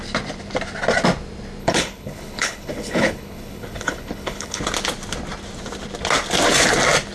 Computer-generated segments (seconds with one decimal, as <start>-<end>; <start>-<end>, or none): 1.6-4.6